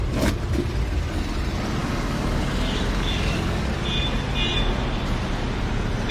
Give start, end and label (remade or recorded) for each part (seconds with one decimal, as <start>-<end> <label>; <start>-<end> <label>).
0.0-1.8 recorded; 1.8-3.7 remade; 3.7-6.1 recorded